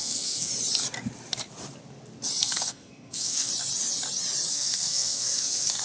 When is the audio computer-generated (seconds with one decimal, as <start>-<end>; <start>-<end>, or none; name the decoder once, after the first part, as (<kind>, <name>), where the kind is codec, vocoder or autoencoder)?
0.0-0.5 (codec, SNAC); 2.4-3.5; 4.5-5.8